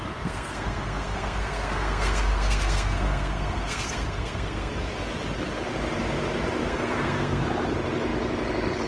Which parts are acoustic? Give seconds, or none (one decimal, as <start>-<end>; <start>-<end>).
4.7-6.6; 7.4-8.9